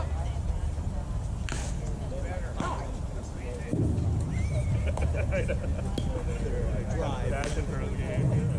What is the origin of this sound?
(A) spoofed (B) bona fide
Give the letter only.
B